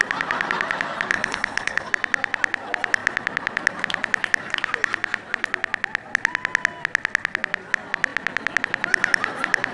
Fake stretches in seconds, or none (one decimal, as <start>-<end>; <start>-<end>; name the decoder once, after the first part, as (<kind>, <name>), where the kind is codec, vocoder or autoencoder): 1.1-1.9 (codec, HILCodec)